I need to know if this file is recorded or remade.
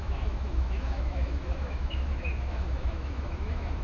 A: remade